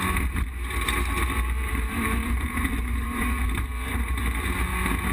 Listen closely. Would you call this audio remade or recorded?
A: remade